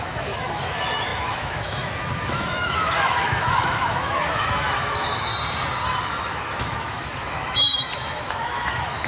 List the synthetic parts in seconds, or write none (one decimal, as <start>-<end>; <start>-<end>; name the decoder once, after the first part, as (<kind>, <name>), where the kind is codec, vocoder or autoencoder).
0.0-5.3 (autoencoder, DAC-VAE); 6.0-9.1